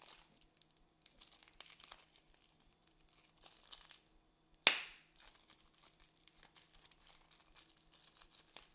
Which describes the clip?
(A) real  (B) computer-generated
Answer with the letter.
A